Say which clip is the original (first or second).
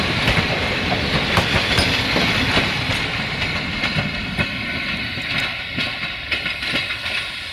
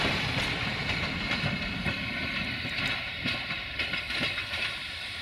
first